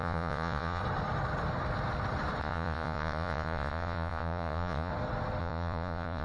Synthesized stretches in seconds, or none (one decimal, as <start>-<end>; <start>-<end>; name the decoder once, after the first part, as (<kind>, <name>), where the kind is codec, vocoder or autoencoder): 0.0-0.8 (vocoder, Vocos); 2.4-4.9; 5.4-6.2